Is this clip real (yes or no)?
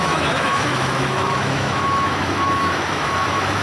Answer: no